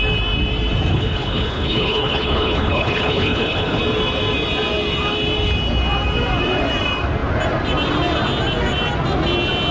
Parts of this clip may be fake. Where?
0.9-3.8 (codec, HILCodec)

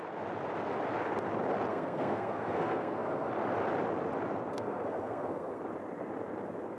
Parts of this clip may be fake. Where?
1.7-3.3 (codec, SNAC); 4.5-5.6

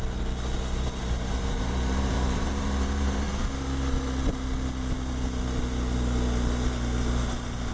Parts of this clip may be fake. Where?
1.0-3.5 (vocoder, BigVGAN v2)

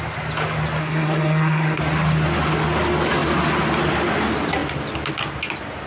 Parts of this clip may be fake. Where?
0.8-1.8 (codec, SNAC)

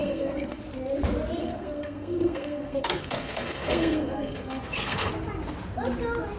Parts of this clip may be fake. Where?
0.0-0.6 (codec, SNAC); 1.4-5.1

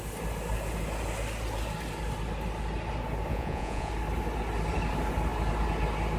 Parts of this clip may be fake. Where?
3.3-3.9 (vocoder, Vocos)

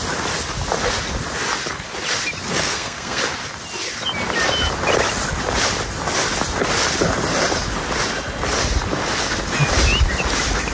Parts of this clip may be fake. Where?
2.5-3.2 (codec, SNAC)